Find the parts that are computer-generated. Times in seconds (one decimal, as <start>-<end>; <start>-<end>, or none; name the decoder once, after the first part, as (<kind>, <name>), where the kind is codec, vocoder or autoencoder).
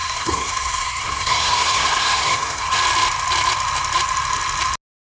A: 0.0-2.8 (codec, SNAC)